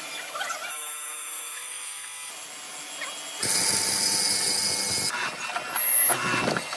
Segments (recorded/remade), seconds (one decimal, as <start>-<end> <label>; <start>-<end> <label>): 0.0-0.7 recorded; 0.7-2.3 remade; 2.3-6.8 recorded